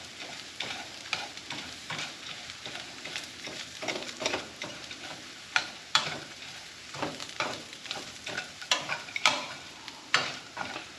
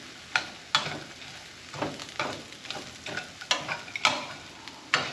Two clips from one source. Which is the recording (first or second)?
second